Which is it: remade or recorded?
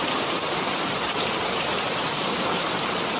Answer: remade